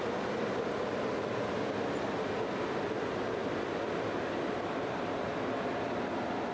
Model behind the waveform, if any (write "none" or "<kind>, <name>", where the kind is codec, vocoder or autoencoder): none